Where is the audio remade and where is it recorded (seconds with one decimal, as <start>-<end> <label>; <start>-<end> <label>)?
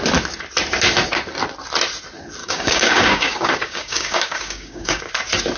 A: 0.0-2.4 recorded; 2.4-5.1 remade; 5.1-5.6 recorded